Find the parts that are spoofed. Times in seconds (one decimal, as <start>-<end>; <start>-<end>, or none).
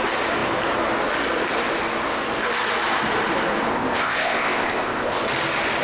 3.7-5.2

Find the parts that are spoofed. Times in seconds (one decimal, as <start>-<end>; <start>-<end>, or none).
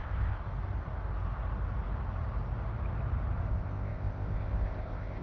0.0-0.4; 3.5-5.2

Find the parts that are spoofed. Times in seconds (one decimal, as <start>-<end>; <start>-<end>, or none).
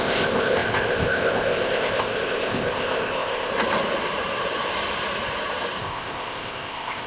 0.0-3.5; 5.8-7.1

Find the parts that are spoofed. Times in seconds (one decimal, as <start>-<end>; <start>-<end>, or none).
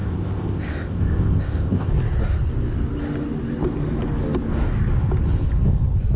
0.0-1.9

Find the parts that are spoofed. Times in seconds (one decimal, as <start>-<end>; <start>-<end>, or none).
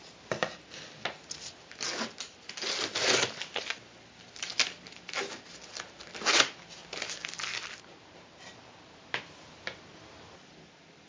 none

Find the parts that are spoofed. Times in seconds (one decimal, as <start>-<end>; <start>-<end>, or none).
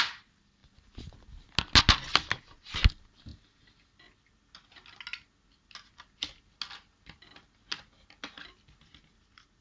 none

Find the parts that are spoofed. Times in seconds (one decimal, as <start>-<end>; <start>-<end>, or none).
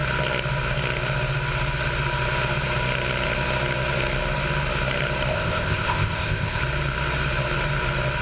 5.3-6.6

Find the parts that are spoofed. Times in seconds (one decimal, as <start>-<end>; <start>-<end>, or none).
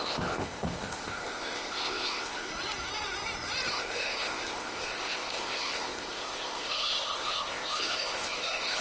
0.0-2.5; 3.7-8.8